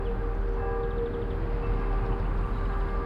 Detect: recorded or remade recorded